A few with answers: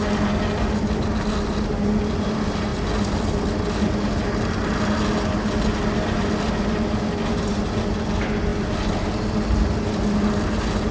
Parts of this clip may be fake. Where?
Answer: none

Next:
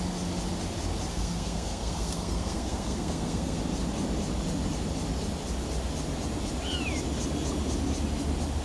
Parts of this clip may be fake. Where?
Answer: 1.1-3.6

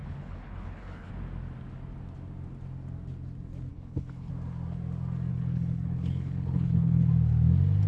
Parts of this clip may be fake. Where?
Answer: 0.0-1.1; 3.7-4.3; 5.3-7.1

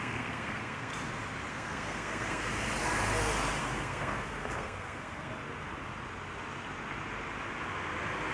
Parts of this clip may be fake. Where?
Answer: 0.0-0.9; 1.5-2.5; 3.6-5.3